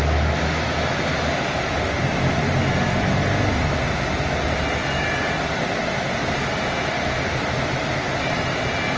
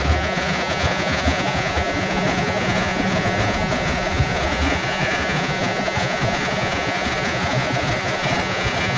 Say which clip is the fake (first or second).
second